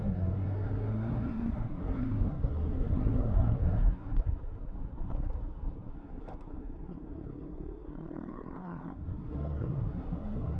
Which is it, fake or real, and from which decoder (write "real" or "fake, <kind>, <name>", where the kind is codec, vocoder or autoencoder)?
fake, codec, SNAC